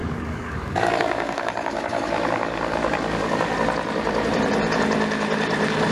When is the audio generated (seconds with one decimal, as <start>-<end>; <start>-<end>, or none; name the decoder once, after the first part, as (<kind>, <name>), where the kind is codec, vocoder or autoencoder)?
0.0-3.5 (codec, DAC)